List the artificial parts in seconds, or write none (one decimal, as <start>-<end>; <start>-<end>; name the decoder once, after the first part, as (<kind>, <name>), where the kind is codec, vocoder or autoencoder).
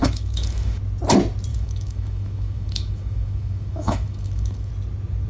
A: 0.0-0.8 (autoencoder, DAC-VAE); 1.5-4.7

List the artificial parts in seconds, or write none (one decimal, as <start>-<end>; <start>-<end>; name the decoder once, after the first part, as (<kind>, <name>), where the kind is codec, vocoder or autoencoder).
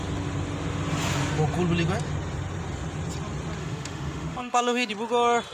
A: 3.6-4.9 (autoencoder, DAC-VAE)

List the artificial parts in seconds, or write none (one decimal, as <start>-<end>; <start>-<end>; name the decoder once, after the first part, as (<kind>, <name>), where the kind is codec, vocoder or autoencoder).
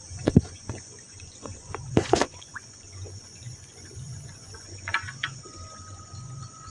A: 0.0-6.7 (vocoder, Vocos)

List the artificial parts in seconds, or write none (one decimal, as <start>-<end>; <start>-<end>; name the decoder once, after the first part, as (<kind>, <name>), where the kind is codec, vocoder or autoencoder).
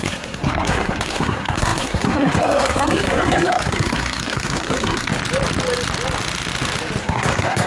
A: 0.0-5.1 (codec, SNAC); 7.0-7.7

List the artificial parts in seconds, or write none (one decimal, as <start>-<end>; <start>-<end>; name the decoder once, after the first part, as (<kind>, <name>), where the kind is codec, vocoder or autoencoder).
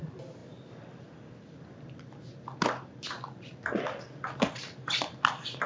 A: none